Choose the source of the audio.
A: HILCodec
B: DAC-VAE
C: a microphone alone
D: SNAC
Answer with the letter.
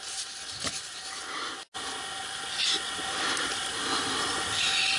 C